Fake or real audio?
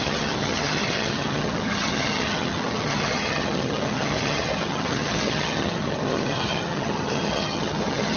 fake